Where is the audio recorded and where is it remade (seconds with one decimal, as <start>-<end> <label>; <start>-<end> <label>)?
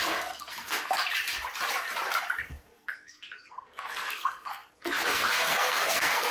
0.0-1.0 remade; 1.0-2.4 recorded; 2.4-6.3 remade